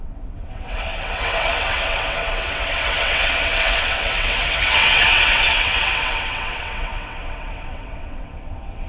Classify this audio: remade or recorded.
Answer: remade